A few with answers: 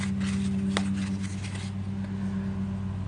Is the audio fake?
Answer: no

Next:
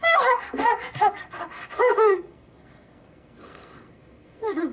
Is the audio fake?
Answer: yes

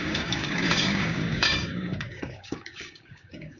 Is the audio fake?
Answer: yes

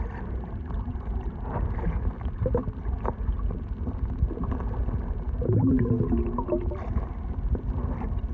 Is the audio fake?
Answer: no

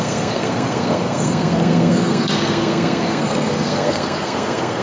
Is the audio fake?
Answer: yes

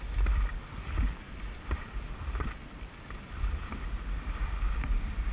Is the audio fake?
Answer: no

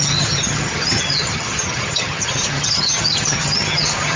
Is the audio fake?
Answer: yes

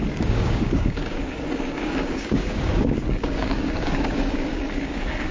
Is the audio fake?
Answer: yes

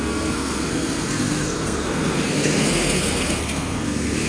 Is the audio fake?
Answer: yes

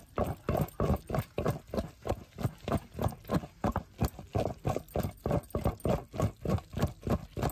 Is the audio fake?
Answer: no